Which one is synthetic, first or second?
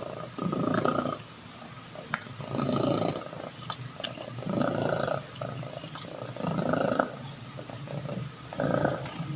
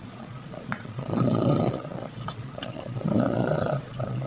second